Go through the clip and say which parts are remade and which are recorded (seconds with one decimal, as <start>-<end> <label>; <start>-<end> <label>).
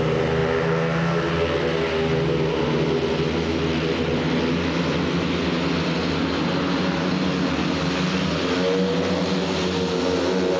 0.0-10.6 recorded